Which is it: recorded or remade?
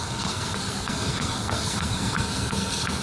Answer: remade